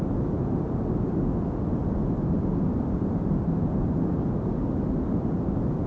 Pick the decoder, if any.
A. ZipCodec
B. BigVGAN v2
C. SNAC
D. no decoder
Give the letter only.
D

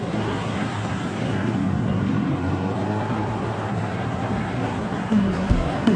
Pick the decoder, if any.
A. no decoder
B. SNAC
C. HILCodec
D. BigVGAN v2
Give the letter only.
B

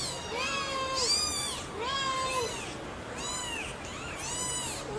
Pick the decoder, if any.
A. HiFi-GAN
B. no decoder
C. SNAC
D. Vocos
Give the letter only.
B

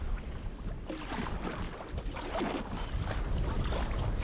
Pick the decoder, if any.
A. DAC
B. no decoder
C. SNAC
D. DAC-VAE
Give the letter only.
B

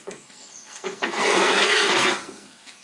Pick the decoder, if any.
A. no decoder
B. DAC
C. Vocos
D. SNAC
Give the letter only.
D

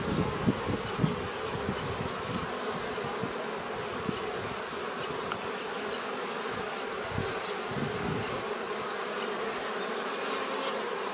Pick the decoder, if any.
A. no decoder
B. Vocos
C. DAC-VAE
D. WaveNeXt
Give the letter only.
A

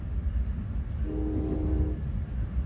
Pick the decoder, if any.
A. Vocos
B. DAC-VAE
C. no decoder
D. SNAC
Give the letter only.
C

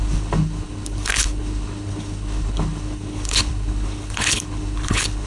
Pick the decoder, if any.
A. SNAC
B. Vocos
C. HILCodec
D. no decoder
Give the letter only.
C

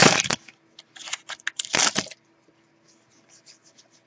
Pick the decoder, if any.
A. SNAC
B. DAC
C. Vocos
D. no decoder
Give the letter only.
D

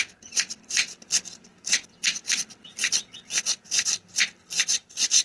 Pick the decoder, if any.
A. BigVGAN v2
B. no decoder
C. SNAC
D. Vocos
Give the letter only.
B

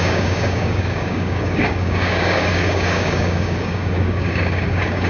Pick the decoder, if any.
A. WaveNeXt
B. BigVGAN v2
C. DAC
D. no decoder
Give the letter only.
C